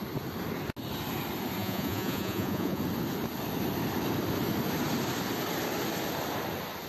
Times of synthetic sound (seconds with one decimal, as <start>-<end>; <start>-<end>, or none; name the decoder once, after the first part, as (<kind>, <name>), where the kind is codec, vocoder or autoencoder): 1.6-2.8 (vocoder, Vocos)